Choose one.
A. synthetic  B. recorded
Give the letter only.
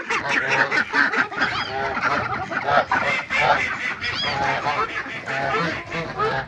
B